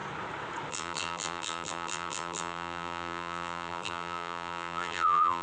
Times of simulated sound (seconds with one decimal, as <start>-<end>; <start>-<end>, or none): 0.7-5.4